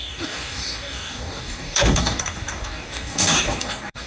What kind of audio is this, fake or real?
fake